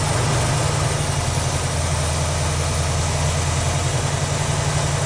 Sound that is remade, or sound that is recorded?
recorded